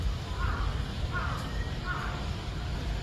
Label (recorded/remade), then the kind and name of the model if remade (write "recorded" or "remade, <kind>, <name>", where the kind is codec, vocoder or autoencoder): remade, codec, DAC